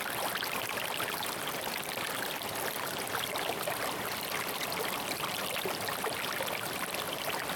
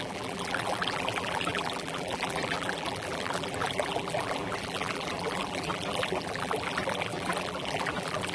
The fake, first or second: second